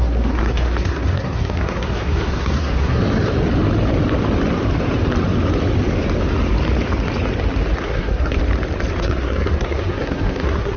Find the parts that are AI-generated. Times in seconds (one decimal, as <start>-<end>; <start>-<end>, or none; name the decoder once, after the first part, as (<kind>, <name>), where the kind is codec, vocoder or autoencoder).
0.0-3.0 (codec, SNAC); 7.8-8.4; 9.0-10.8

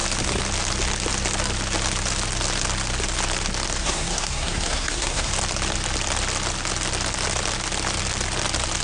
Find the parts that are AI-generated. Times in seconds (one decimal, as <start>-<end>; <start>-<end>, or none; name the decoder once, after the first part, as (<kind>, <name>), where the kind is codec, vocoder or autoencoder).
3.8-5.3 (codec, SNAC)

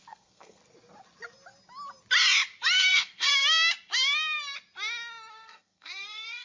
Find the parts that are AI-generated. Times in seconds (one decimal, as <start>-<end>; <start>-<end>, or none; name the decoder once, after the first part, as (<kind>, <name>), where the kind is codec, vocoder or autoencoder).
0.0-0.6 (codec, SNAC); 2.8-3.3; 5.3-6.4

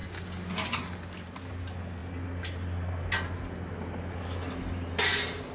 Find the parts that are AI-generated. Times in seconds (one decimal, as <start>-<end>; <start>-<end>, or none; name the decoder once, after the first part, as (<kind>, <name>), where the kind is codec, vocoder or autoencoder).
none

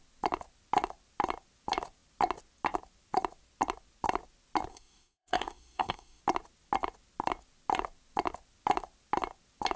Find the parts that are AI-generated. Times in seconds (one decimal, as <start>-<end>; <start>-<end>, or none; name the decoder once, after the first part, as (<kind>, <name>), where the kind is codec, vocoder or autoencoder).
4.7-6.2 (codec, SNAC)

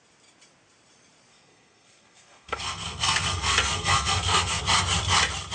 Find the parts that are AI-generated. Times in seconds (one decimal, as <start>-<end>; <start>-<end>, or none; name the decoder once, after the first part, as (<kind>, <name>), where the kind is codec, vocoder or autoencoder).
1.3-4.6 (codec, SNAC)

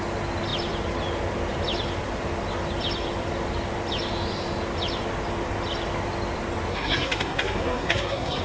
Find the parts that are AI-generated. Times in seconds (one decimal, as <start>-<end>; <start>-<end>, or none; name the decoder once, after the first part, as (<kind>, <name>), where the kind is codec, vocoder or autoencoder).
6.7-8.4 (codec, SNAC)

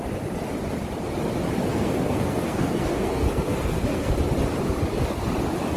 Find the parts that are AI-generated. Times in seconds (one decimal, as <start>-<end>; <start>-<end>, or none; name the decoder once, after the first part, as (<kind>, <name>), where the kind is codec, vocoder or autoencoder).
1.7-4.1 (codec, SNAC)